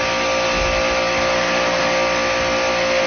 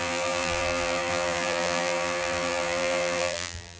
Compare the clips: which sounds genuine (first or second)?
first